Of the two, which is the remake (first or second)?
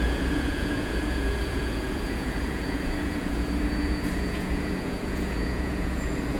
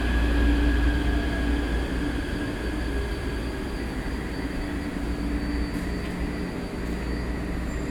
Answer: first